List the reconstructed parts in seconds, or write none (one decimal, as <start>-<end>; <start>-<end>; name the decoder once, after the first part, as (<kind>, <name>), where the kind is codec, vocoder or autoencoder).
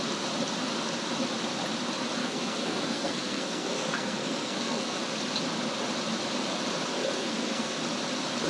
2.2-5.0 (codec, SNAC); 6.9-7.8